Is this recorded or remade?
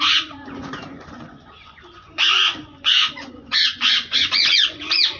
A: remade